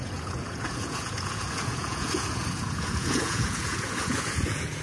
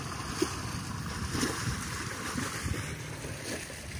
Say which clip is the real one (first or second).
second